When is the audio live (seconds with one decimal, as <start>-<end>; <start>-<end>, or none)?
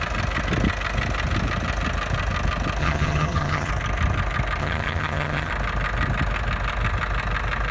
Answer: 0.0-2.8; 3.7-4.6; 5.5-7.7